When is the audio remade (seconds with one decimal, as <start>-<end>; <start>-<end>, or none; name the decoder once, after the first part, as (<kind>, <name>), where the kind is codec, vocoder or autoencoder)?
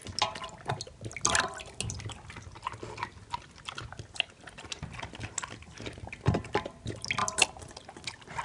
none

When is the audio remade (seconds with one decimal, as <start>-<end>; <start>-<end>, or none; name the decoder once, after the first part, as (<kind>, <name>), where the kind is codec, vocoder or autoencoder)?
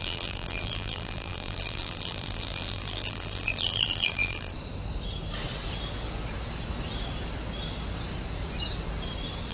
0.0-4.5 (vocoder, BigVGAN v2)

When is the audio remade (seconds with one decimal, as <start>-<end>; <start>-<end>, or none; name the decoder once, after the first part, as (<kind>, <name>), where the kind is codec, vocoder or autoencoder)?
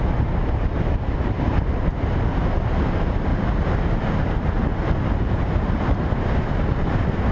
0.0-3.3 (vocoder, BigVGAN v2); 5.2-7.3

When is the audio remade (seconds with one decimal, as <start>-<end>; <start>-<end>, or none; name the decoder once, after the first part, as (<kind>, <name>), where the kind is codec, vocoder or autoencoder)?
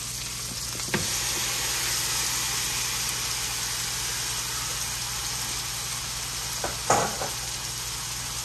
none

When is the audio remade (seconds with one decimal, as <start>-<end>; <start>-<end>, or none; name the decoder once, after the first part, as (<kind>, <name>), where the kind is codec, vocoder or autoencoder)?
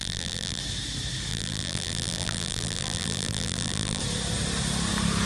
0.0-0.6 (vocoder, BigVGAN v2); 1.3-4.0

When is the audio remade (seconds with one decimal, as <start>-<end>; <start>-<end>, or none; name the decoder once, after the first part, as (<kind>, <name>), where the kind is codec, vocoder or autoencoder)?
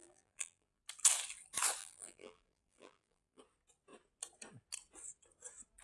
0.0-0.8 (vocoder, BigVGAN v2); 1.8-3.4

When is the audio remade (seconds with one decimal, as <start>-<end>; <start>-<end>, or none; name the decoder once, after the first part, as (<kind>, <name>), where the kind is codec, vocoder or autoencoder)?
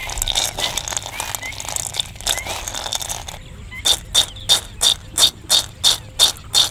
none